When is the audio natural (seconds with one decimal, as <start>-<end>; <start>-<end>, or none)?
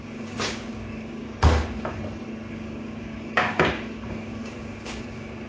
2.0-2.5